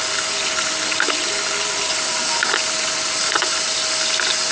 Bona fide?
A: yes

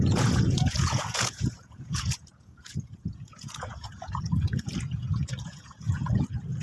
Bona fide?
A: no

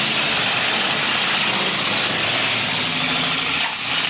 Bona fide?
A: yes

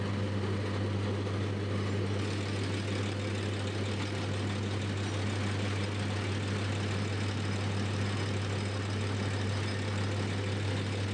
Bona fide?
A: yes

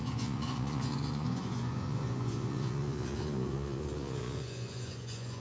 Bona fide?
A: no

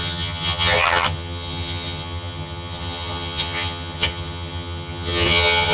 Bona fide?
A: no